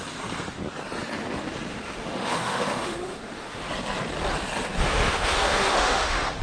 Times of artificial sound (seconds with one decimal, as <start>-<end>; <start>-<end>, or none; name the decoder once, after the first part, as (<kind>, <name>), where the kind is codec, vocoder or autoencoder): 1.7-3.7 (autoencoder, DAC-VAE); 4.8-6.4

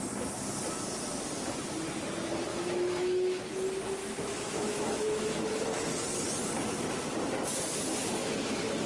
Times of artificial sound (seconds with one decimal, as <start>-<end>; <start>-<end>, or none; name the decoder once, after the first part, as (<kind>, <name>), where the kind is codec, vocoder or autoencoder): 2.5-3.4 (autoencoder, DAC-VAE); 4.0-5.3